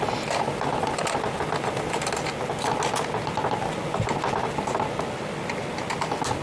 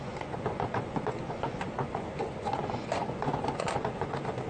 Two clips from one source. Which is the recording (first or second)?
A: first